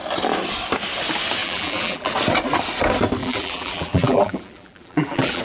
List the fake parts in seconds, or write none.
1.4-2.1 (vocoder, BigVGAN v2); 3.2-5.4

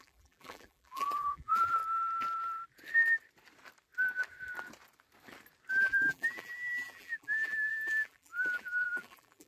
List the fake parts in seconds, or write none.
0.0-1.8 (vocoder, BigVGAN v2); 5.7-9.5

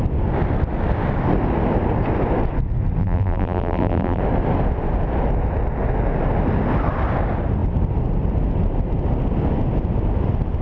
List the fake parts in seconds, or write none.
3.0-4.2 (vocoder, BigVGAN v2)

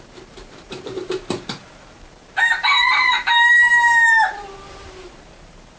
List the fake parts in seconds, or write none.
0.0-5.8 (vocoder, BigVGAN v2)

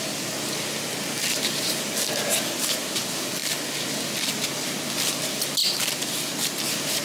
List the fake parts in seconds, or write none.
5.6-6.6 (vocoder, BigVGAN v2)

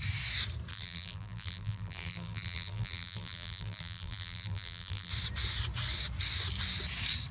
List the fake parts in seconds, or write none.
0.7-5.1 (vocoder, BigVGAN v2)